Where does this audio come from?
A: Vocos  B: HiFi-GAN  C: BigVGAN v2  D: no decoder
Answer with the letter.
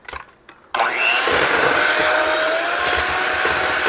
D